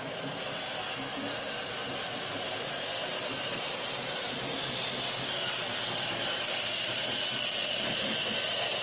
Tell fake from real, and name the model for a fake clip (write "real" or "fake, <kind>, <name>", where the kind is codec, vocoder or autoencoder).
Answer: real